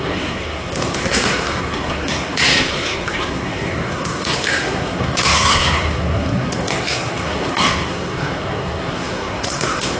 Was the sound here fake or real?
fake